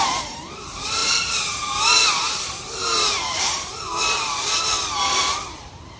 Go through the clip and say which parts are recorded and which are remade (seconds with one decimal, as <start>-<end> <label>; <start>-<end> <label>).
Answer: 0.0-6.0 remade